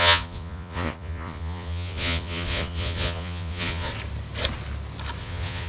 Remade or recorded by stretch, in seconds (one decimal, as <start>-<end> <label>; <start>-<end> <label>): 0.0-3.9 remade; 3.9-5.2 recorded; 5.2-5.7 remade